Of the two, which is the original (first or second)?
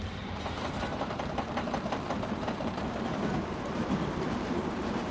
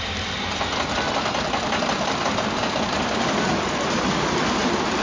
second